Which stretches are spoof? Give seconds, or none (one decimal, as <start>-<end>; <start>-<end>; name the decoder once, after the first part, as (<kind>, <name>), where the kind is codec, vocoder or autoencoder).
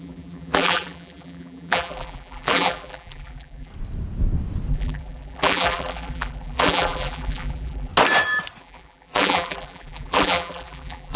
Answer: 0.0-3.7 (vocoder, BigVGAN v2); 4.7-7.9; 8.6-11.2